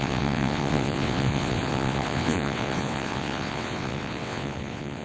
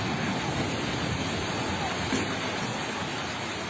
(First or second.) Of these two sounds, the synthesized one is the first